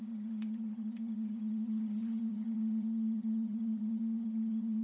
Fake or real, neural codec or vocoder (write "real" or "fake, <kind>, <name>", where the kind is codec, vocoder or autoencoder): fake, vocoder, HiFi-GAN